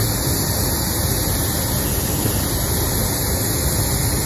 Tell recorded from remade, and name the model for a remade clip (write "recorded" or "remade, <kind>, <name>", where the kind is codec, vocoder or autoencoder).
recorded